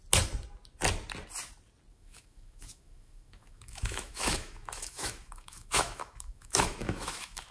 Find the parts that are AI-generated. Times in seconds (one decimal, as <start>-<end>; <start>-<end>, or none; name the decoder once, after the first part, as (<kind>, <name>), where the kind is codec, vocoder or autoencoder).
1.9-7.5 (autoencoder, DAC-VAE)